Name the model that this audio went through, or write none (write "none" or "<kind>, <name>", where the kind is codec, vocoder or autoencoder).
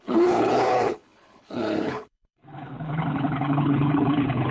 codec, HILCodec